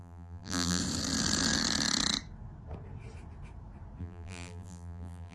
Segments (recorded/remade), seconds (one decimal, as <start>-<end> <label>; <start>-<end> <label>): 0.0-0.8 remade; 0.8-4.0 recorded; 4.0-5.3 remade

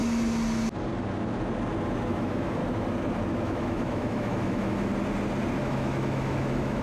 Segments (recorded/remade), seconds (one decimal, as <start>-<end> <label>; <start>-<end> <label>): 0.0-2.1 recorded; 2.1-2.6 remade; 2.6-3.3 recorded; 3.3-4.9 remade; 4.9-5.6 recorded; 5.6-6.8 remade

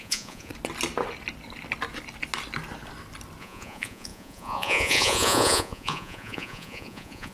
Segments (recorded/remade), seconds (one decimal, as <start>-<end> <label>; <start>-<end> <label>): 0.0-0.5 remade; 0.5-3.4 recorded; 3.4-7.3 remade

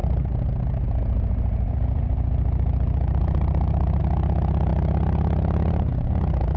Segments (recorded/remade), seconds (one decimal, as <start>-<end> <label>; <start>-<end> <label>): 0.0-4.0 remade; 4.0-6.6 recorded

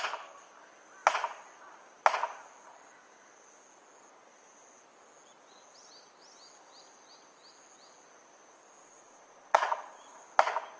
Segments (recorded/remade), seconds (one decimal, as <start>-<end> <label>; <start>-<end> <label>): 0.0-8.8 recorded; 8.8-10.2 remade; 10.2-10.8 recorded

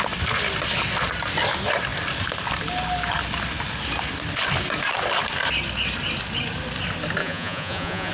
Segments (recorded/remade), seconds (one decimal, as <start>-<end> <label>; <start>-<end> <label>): 0.0-7.2 recorded; 7.2-8.1 remade